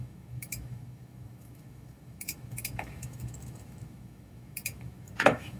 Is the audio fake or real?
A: fake